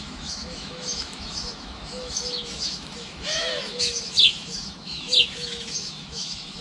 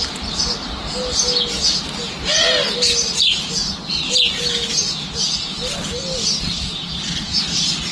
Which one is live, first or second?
second